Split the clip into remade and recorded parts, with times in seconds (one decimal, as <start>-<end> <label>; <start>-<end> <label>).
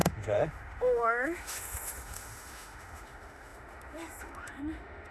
0.0-5.1 remade